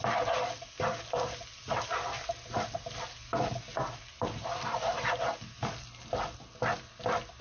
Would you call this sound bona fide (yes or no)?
yes